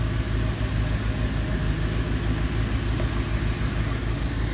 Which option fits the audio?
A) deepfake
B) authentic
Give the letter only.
B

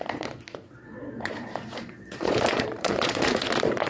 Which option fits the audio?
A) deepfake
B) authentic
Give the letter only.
A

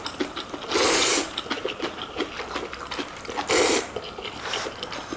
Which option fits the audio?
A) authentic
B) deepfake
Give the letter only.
A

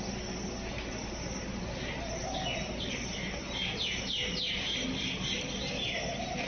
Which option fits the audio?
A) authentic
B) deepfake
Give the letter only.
A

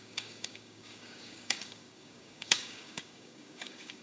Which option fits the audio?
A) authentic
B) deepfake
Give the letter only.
B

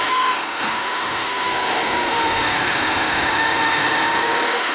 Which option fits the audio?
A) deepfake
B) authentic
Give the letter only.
A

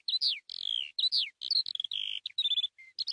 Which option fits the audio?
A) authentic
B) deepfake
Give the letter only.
A